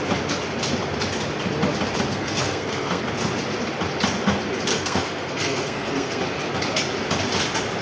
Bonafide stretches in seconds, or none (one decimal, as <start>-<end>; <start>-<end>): 0.0-2.1; 3.0-4.7; 6.2-7.8